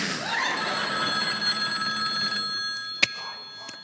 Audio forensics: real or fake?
real